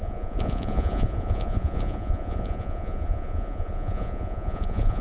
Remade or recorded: remade